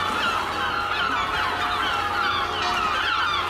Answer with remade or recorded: recorded